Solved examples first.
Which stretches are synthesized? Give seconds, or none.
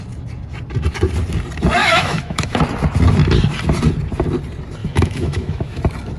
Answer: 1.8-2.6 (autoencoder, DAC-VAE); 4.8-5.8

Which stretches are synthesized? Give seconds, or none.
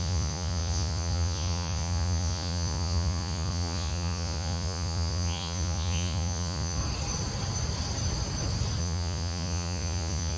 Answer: 0.0-6.8 (vocoder, Vocos); 8.8-10.4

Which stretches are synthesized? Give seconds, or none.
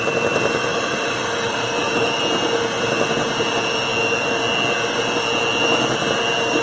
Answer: 0.7-2.2 (autoencoder, DAC-VAE); 3.9-4.4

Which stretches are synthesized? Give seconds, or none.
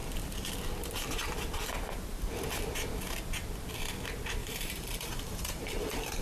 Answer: 4.4-6.2 (vocoder, BigVGAN v2)